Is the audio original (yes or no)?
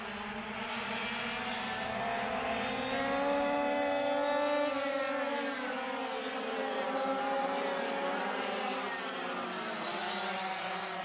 yes